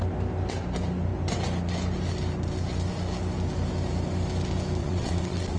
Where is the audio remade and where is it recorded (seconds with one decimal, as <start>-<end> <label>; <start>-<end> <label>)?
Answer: 0.0-4.8 recorded; 4.8-5.6 remade